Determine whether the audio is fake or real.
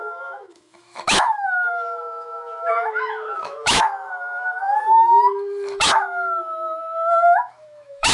fake